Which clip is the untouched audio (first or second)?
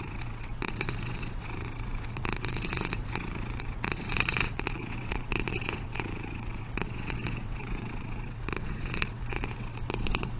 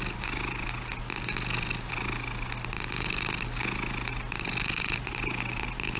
second